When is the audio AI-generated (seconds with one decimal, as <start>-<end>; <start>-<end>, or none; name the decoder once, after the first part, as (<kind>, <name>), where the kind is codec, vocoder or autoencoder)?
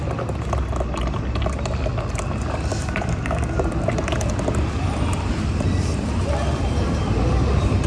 2.7-3.6 (codec, DAC)